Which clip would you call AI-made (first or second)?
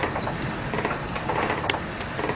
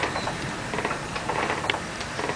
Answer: second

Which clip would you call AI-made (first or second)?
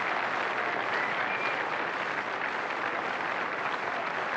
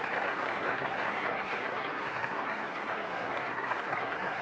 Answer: second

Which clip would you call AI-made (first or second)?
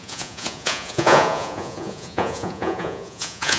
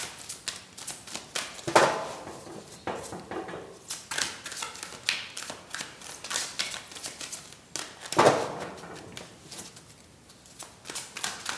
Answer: first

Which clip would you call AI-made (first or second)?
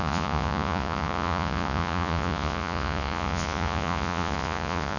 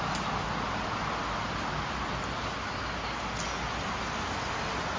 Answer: first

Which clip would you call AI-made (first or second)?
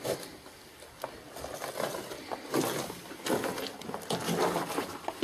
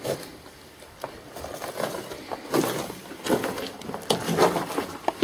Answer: second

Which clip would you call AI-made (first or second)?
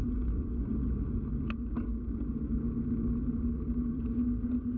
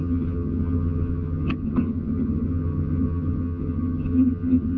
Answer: second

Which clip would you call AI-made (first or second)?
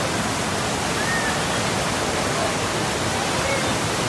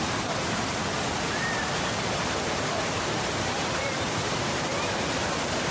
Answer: second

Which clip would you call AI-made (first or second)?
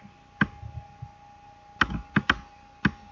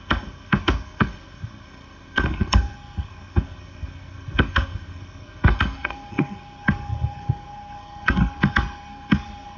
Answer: second